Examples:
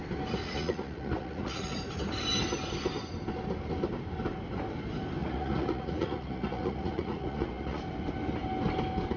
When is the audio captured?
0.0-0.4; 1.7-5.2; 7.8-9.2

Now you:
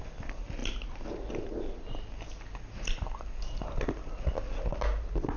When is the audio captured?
0.0-5.4

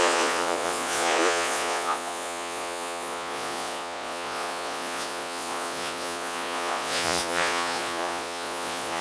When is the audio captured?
none